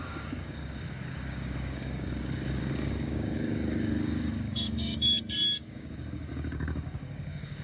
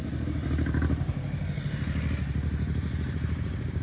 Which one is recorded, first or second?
second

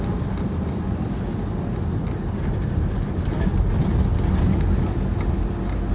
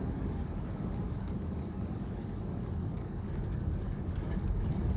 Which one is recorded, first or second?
first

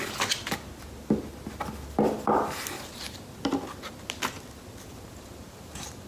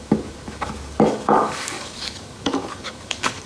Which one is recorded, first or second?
first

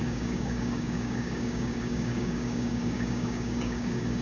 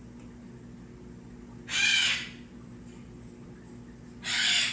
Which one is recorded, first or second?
second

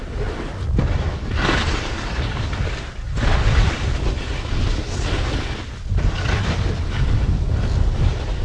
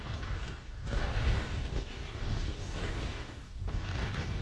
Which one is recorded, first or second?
first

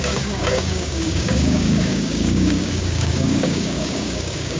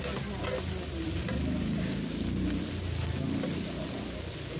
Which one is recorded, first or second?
second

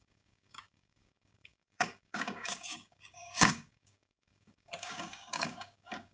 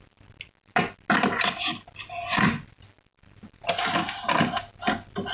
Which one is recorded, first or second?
second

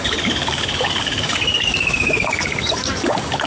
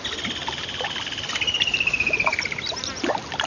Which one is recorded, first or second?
second